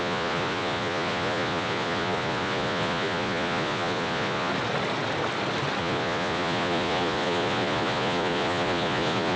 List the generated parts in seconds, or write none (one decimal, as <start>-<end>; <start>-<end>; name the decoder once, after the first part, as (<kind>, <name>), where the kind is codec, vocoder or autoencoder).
0.0-4.5 (vocoder, Vocos); 5.8-9.4